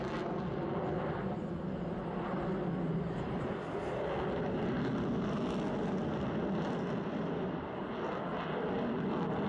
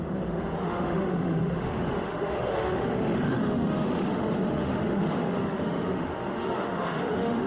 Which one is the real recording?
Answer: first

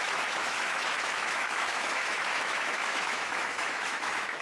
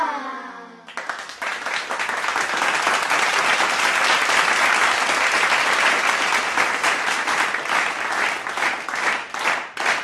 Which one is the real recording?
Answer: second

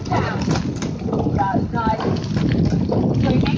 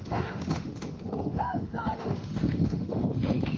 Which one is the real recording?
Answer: first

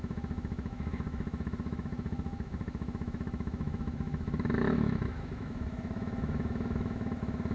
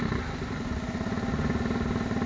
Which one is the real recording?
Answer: second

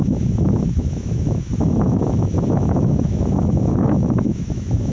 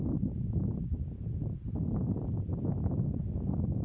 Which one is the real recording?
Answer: second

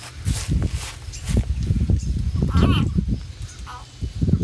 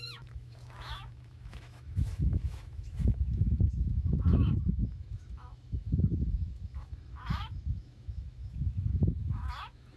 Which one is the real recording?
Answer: first